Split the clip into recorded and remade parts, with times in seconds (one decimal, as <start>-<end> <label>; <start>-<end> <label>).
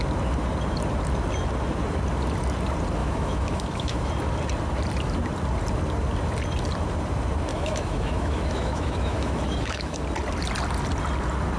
0.0-3.0 recorded; 3.0-4.1 remade; 4.1-7.5 recorded; 7.5-10.0 remade; 10.0-11.6 recorded